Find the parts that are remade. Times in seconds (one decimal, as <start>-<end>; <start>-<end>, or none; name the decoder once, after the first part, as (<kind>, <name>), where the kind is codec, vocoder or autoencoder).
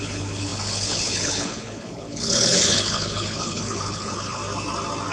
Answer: 0.0-4.4 (codec, HILCodec)